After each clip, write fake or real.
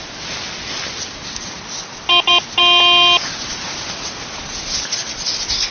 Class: real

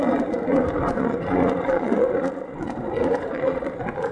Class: fake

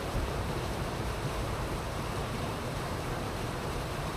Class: fake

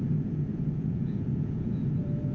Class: fake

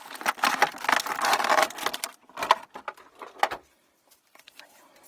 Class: real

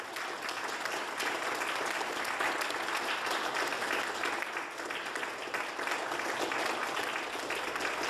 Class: real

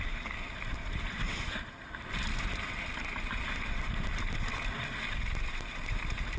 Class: real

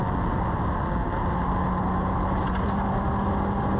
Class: real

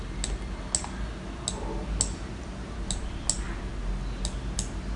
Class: real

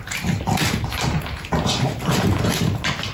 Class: real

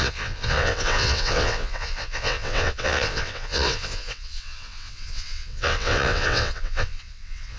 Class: fake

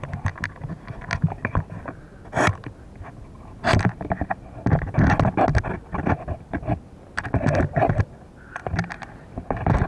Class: real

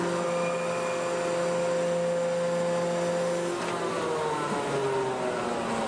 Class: real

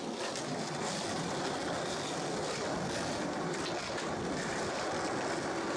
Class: real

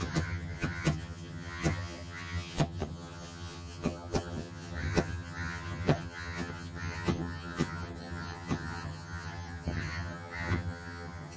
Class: fake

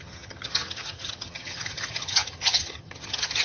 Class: fake